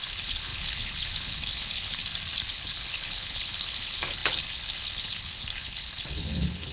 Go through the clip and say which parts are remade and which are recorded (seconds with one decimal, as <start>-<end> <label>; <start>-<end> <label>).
0.0-2.0 remade; 2.0-2.5 recorded; 2.5-6.7 remade